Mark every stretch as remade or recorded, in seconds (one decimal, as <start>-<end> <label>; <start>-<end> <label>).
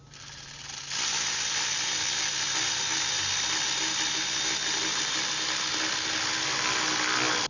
0.0-7.5 recorded